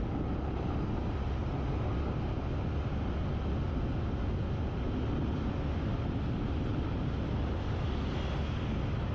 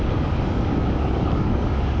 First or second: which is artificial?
second